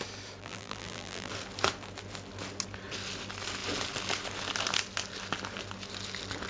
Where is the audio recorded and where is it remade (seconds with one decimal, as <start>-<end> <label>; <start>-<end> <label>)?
0.0-0.4 recorded; 0.4-1.3 remade; 1.3-6.5 recorded